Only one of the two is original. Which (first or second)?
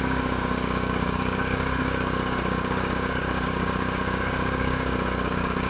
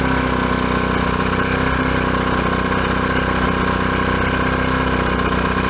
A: second